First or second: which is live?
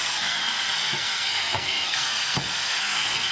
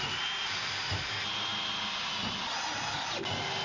second